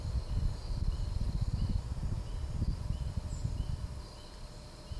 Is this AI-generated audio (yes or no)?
no